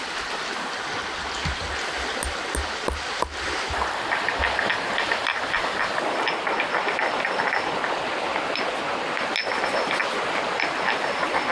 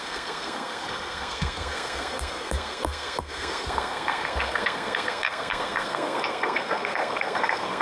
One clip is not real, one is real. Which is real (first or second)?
first